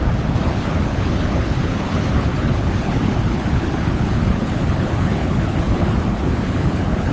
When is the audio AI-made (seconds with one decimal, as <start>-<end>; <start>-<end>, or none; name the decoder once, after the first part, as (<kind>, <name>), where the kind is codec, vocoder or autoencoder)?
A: 0.0-7.1 (codec, HILCodec)